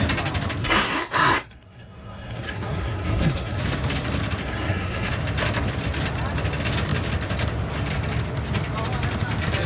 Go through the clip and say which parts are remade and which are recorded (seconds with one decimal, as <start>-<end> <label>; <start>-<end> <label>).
0.0-0.6 recorded; 0.6-3.6 remade; 3.6-4.4 recorded; 4.4-5.1 remade; 5.1-9.7 recorded